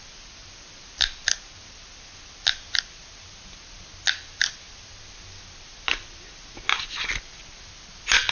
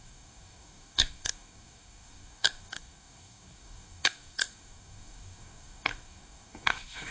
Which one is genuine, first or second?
first